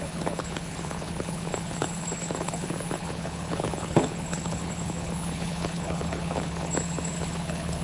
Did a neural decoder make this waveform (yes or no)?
yes